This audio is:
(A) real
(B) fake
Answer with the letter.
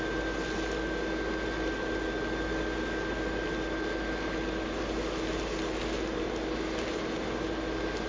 A